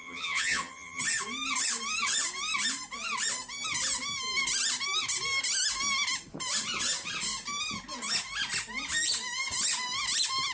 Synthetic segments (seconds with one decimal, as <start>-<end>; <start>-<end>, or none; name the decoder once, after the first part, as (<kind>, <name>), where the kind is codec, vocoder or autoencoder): 0.0-1.0 (vocoder, HiFi-GAN)